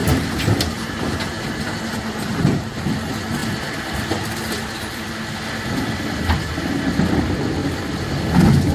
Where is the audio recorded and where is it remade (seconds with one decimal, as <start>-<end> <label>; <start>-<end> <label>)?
0.0-2.8 remade; 2.8-3.4 recorded; 3.4-5.1 remade; 5.1-8.7 recorded